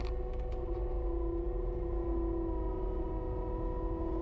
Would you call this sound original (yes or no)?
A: yes